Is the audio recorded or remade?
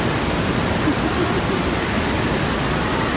recorded